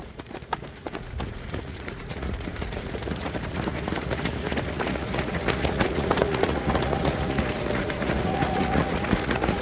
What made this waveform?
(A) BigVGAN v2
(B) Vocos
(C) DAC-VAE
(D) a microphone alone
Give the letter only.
B